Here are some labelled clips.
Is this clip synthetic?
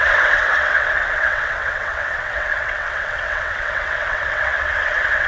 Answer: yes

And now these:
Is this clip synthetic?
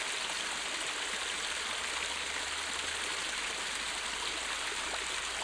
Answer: no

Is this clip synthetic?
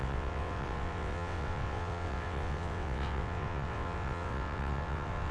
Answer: yes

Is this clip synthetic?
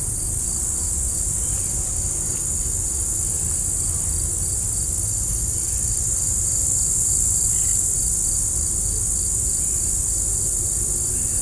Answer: no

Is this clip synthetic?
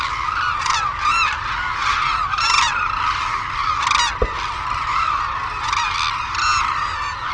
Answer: no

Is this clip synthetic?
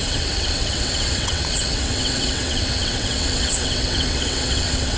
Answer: yes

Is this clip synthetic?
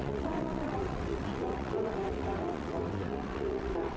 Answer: yes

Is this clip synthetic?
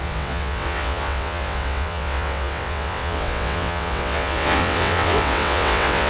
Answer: yes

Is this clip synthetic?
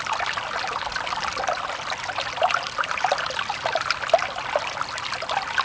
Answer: no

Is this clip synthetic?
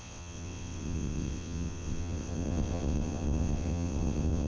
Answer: yes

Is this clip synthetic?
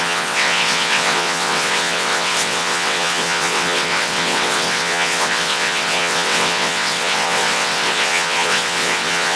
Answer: yes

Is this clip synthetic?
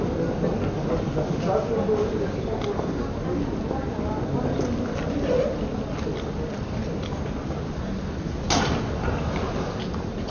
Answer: no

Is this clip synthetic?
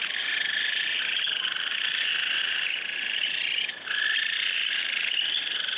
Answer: no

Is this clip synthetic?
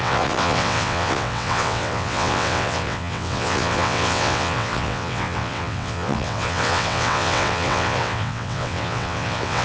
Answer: yes